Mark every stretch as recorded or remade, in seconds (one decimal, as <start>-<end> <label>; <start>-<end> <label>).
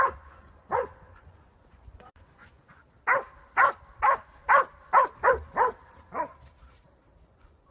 0.0-2.8 remade; 2.8-7.2 recorded; 7.2-7.7 remade